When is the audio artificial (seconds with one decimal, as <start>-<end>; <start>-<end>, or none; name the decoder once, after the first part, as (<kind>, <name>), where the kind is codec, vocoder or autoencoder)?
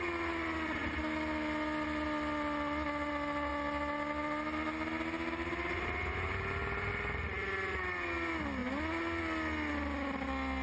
none